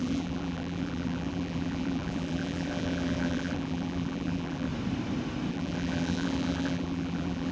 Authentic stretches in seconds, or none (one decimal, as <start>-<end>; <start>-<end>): 4.7-5.5